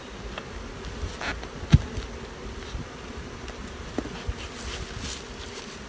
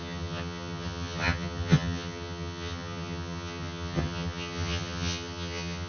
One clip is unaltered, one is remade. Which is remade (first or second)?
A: second